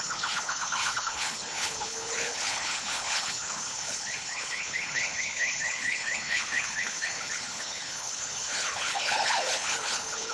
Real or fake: fake